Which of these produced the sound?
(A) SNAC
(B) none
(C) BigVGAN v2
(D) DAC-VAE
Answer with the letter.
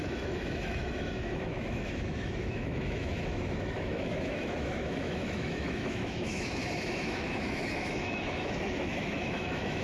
D